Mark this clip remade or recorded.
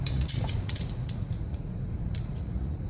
remade